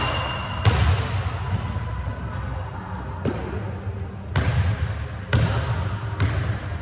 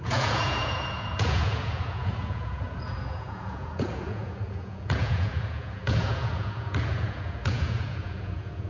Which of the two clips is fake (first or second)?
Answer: second